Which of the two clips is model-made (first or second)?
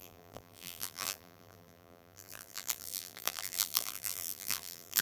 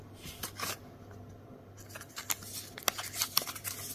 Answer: first